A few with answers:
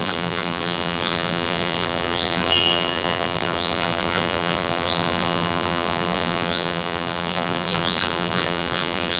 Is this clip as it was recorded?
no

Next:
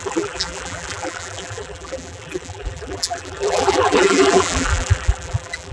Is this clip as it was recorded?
no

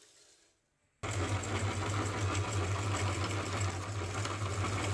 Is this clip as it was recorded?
yes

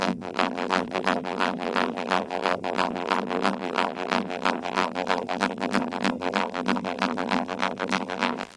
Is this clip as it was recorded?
no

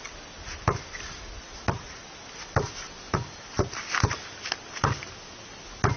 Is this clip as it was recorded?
yes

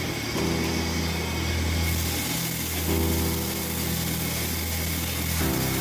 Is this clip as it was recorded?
yes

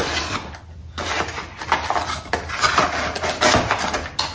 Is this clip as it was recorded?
yes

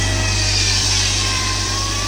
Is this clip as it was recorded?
no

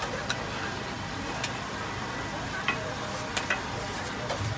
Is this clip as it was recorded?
yes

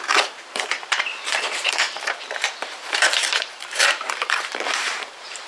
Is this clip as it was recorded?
no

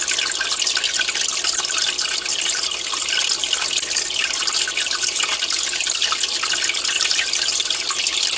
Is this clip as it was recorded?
yes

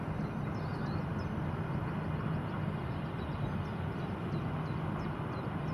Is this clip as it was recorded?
no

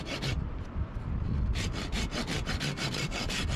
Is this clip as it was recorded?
no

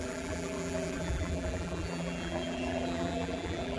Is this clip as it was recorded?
no